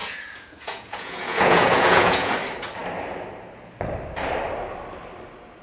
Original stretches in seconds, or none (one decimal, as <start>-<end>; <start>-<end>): 2.3-5.6